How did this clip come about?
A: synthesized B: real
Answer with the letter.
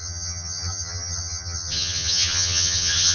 A